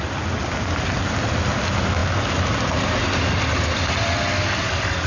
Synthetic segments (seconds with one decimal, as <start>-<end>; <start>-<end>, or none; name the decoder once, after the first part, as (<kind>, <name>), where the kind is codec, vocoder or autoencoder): none